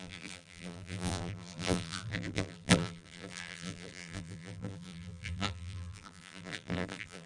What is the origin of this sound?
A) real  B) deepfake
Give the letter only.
B